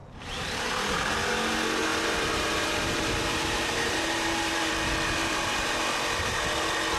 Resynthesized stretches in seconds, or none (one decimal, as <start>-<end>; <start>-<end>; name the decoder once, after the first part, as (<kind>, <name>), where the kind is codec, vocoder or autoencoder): 0.0-1.3 (vocoder, BigVGAN v2); 1.9-4.7; 5.2-5.8